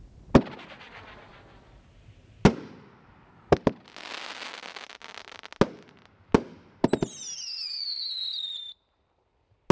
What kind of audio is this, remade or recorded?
recorded